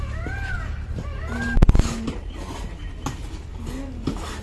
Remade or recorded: recorded